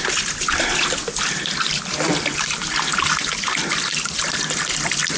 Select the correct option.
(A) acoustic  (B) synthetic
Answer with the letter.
A